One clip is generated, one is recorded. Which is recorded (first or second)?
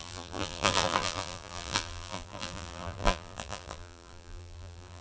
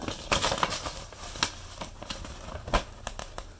second